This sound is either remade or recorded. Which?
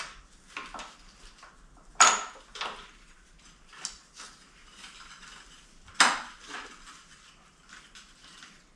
recorded